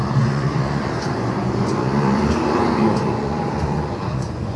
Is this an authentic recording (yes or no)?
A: no